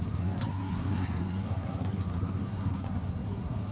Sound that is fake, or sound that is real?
fake